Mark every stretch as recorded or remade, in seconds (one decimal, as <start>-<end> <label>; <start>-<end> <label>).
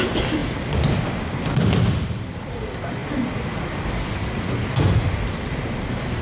0.0-0.4 remade; 0.4-1.9 recorded; 1.9-3.0 remade; 3.0-5.1 recorded; 5.1-6.2 remade